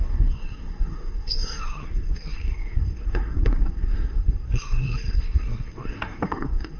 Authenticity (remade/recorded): remade